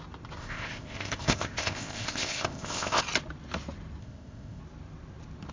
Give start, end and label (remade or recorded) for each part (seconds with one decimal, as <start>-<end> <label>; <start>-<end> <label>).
0.0-0.4 recorded; 0.4-3.0 remade; 3.0-4.0 recorded; 4.0-4.6 remade; 4.6-5.5 recorded